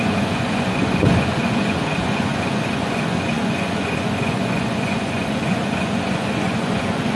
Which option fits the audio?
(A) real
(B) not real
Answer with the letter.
B